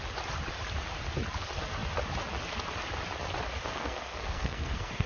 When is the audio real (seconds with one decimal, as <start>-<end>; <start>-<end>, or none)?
0.0-3.7